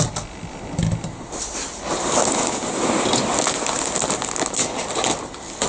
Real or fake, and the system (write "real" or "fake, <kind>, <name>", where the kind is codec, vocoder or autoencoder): real